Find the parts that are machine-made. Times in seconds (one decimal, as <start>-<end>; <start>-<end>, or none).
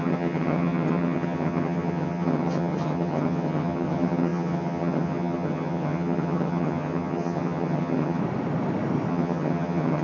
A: 0.0-8.2; 9.1-10.0